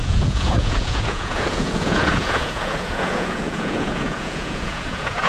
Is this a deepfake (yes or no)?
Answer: yes